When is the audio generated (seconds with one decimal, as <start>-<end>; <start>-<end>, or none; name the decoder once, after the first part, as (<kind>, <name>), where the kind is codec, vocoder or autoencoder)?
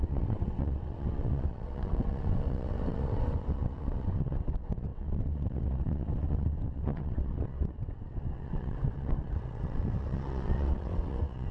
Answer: 0.0-11.5 (vocoder, WaveNeXt)